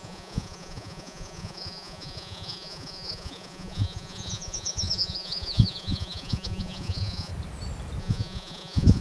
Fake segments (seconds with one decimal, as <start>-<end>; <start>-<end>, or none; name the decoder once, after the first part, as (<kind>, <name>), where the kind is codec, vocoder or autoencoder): 0.0-7.3 (vocoder, Vocos); 8.0-9.0